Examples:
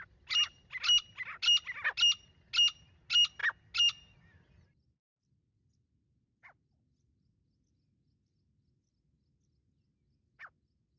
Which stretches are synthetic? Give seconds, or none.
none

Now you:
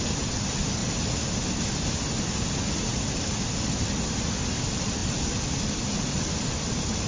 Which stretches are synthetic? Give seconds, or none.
none

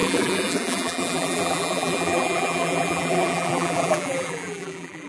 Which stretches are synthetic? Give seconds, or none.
0.0-5.1 (vocoder, BigVGAN v2)

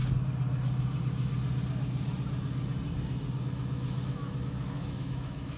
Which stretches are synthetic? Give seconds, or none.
3.4-5.6 (autoencoder, DAC-VAE)

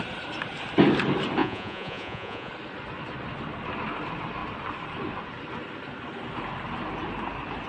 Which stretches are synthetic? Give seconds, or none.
1.4-2.5 (vocoder, Vocos)

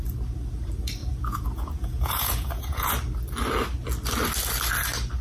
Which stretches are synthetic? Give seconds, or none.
1.0-2.9 (vocoder, Vocos)

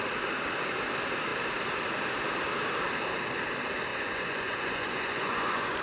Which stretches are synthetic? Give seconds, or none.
3.9-5.8 (vocoder, Vocos)

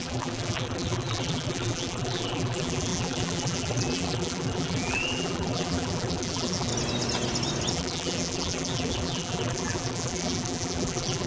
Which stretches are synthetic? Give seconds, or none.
0.0-6.7 (vocoder, BigVGAN v2); 7.7-11.3